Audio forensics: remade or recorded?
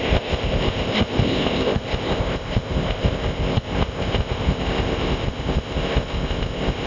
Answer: remade